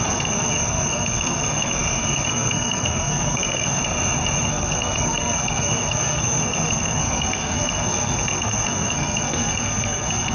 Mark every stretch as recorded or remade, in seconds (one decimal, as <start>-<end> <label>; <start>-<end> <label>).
0.0-3.8 remade; 3.8-4.5 recorded; 4.5-10.3 remade